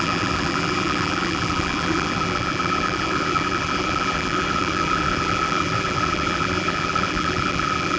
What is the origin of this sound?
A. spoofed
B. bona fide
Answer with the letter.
A